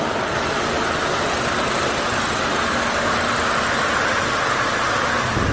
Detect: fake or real real